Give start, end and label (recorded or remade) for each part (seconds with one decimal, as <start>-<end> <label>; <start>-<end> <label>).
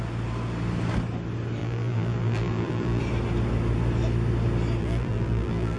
0.0-1.6 recorded; 1.6-3.0 remade; 3.0-4.8 recorded; 4.8-5.8 remade